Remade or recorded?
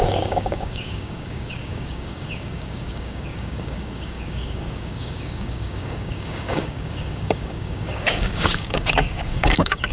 remade